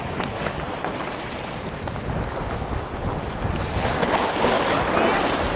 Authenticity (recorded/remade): recorded